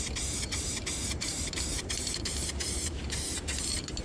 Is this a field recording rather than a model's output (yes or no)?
no